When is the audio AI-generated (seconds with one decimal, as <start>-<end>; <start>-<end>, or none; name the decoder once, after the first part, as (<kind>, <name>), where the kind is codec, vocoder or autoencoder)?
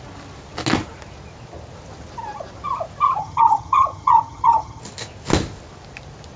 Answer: 3.2-4.8 (vocoder, HiFi-GAN)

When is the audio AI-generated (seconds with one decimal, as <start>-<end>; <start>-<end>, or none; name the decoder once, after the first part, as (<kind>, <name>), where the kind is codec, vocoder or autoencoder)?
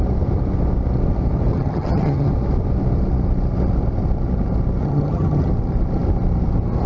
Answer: 1.5-2.3 (vocoder, HiFi-GAN); 4.8-5.5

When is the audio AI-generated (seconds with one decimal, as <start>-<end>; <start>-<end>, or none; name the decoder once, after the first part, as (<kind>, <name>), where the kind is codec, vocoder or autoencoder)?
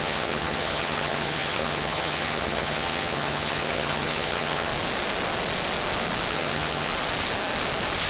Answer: 0.0-4.7 (vocoder, HiFi-GAN); 6.3-6.9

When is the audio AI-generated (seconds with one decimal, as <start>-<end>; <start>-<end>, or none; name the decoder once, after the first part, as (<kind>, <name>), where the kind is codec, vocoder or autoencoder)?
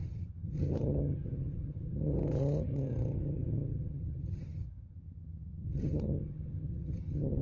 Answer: 0.0-7.4 (vocoder, HiFi-GAN)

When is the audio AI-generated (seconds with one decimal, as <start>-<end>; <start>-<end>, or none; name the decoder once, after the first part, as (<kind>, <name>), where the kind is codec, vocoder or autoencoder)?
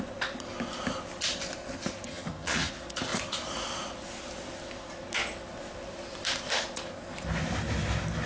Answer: 2.1-2.7 (vocoder, HiFi-GAN)